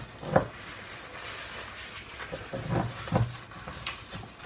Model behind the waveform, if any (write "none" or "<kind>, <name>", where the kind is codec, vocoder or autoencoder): none